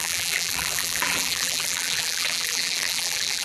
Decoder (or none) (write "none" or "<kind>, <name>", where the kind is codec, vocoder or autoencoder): vocoder, BigVGAN v2